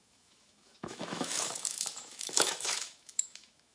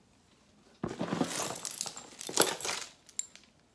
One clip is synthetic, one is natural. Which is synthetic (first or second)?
first